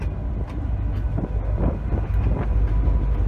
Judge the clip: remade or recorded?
recorded